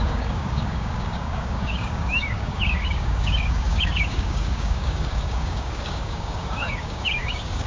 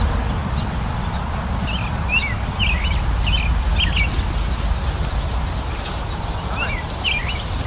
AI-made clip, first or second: first